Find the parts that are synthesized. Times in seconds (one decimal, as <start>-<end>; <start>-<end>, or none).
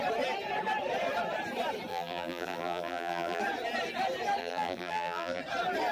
1.9-3.4; 4.4-5.4